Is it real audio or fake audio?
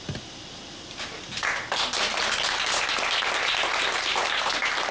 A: real